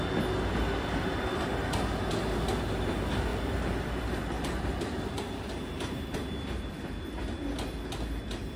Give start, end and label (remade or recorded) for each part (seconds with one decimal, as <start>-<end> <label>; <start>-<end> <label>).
0.0-3.3 recorded; 3.3-6.8 remade; 6.8-8.6 recorded